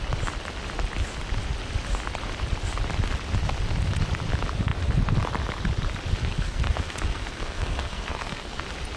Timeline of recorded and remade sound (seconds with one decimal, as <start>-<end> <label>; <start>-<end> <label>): 0.0-6.1 recorded; 6.1-8.6 remade; 8.6-9.0 recorded